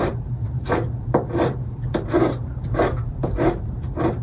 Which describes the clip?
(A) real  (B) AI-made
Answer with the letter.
B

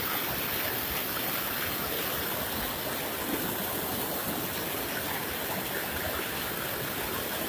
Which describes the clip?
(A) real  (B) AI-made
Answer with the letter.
A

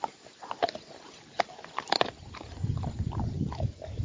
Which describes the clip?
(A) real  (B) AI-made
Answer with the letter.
A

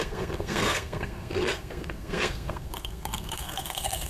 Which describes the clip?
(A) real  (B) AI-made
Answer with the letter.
B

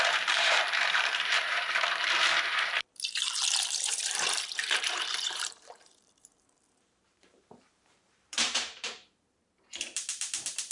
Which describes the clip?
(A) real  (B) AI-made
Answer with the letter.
B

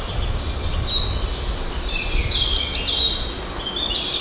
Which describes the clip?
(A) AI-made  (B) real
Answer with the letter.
B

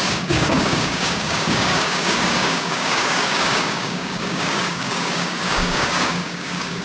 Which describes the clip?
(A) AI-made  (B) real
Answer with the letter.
A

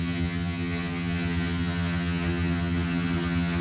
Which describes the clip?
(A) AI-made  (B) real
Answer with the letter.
A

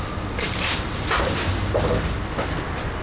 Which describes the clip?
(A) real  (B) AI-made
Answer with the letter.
A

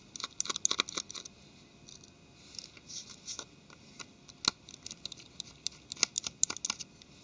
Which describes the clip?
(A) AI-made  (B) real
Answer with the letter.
B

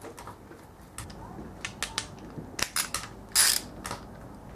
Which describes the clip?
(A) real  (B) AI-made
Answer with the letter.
A